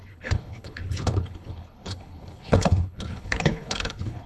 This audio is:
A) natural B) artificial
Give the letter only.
B